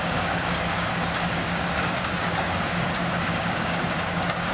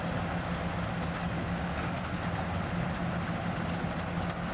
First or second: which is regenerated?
first